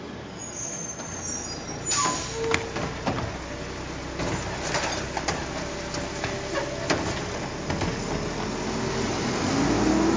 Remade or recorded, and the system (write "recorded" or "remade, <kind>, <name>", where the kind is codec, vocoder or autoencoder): recorded